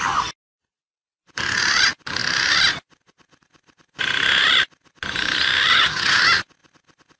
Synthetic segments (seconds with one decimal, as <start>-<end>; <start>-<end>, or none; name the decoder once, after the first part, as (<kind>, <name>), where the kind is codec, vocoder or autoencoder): 5.7-6.2 (vocoder, HiFi-GAN)